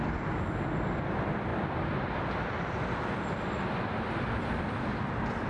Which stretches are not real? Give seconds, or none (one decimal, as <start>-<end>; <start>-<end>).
none